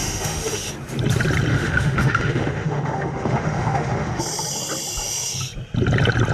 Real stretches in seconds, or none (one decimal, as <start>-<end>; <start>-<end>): 0.7-1.5; 4.2-6.3